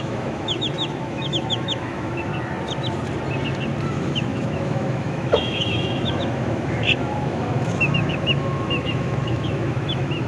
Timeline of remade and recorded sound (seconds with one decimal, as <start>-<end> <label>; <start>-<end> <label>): 0.0-2.3 remade; 2.3-3.9 recorded; 3.9-10.3 remade